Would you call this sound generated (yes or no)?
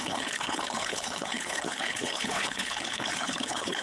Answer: yes